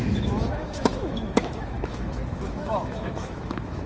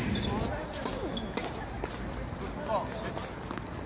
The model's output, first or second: first